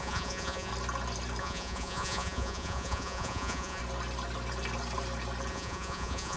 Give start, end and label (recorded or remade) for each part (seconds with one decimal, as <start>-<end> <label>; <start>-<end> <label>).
0.0-0.7 remade; 0.7-1.4 recorded; 1.4-3.8 remade; 3.8-5.5 recorded; 5.5-6.4 remade